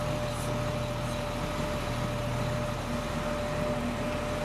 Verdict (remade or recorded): recorded